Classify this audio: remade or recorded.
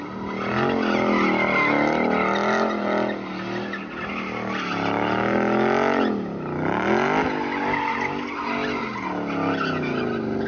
recorded